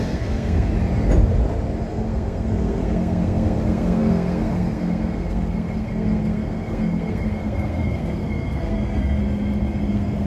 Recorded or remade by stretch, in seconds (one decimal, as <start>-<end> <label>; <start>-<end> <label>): 0.0-0.7 remade; 0.7-1.9 recorded; 1.9-9.2 remade; 9.2-9.9 recorded; 9.9-10.3 remade